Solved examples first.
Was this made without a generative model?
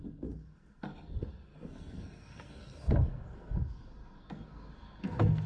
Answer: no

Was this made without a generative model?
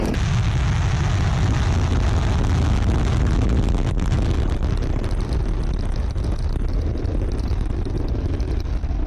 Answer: yes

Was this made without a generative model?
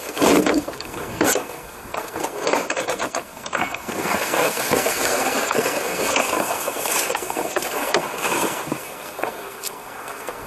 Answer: no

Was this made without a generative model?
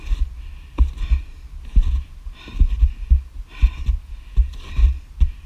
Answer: yes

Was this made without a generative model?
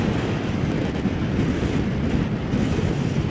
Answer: yes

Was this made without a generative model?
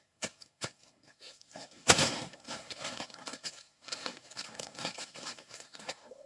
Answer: no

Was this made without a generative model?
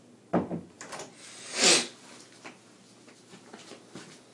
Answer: yes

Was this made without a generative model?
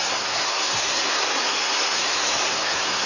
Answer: no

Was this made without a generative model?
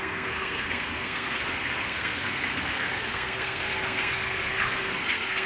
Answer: no